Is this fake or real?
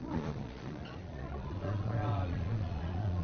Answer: fake